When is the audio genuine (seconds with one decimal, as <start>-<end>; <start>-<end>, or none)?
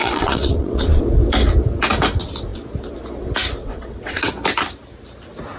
1.0-3.6; 4.3-5.6